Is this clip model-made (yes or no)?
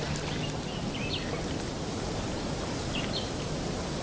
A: no